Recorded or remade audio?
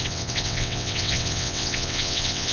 remade